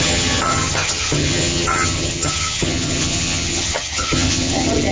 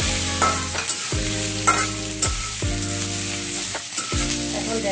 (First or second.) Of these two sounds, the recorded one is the second